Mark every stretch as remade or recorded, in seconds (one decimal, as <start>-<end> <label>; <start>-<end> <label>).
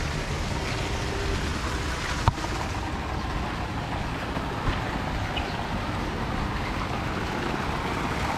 0.0-8.4 recorded